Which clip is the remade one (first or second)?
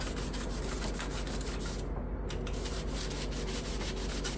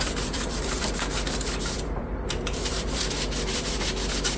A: second